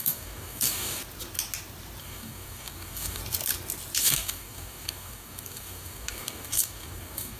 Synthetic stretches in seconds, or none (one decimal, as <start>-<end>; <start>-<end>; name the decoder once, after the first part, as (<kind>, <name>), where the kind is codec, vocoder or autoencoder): 0.0-1.0 (codec, DAC); 2.0-3.2; 4.0-7.4